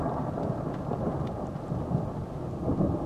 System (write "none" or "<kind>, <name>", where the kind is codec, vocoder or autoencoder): none